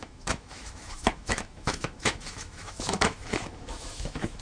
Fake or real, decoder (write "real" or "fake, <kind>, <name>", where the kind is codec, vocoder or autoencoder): fake, autoencoder, DAC-VAE